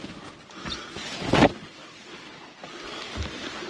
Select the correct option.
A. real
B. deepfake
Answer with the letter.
A